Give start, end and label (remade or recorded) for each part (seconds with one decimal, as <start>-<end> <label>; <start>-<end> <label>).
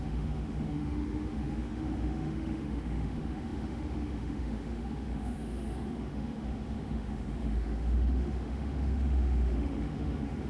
0.0-10.5 remade